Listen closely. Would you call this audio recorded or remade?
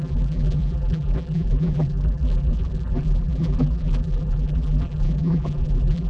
remade